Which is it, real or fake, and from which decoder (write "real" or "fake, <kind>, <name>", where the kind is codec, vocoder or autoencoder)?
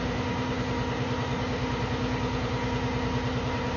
real